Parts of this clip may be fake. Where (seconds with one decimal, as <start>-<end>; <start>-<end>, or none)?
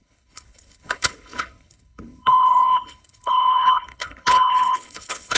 0.0-5.4